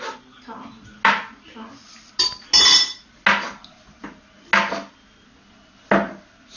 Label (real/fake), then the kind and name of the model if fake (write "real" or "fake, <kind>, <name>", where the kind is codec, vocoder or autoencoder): real